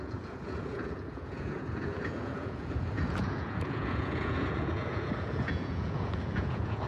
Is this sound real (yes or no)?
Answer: no